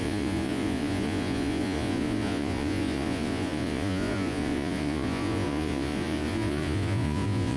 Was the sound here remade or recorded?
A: remade